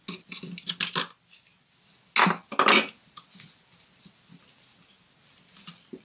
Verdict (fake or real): real